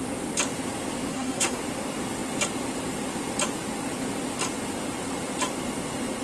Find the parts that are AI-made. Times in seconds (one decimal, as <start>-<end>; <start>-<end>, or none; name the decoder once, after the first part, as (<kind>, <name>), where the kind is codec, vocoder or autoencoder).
1.1-1.6 (codec, SNAC)